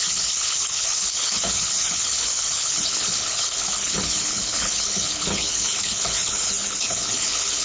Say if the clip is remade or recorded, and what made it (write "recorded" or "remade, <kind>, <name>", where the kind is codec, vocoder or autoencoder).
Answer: remade, codec, HILCodec